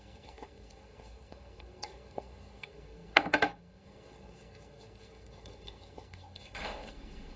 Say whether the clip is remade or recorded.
remade